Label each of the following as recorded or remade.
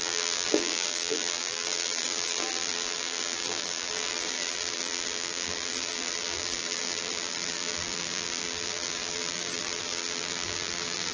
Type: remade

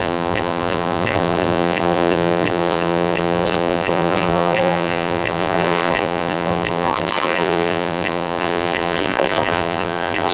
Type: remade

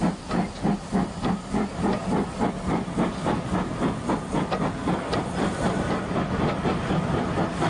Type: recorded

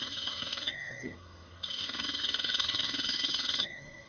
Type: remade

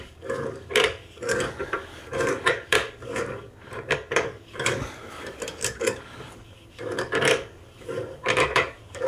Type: remade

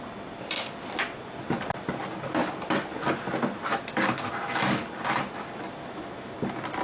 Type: recorded